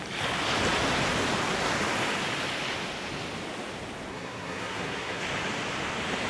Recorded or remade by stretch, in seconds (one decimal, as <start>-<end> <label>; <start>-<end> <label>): 0.0-4.1 recorded; 4.1-5.2 remade; 5.2-6.3 recorded